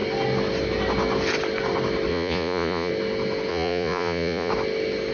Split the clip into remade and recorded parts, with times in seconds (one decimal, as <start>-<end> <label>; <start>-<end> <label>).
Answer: 0.0-2.1 recorded; 2.1-2.9 remade; 2.9-3.5 recorded; 3.5-4.5 remade; 4.5-5.1 recorded